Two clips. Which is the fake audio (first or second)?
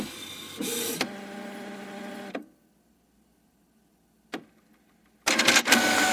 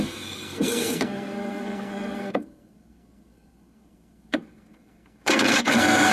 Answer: second